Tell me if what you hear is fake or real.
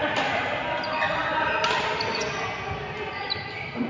real